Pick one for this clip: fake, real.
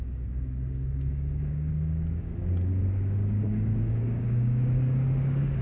fake